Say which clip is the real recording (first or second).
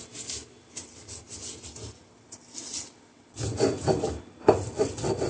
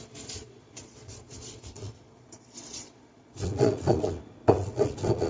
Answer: first